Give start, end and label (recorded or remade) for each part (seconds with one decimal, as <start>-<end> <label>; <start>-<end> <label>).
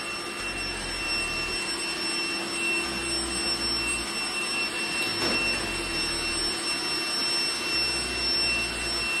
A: 0.0-9.2 recorded